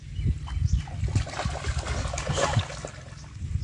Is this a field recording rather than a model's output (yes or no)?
yes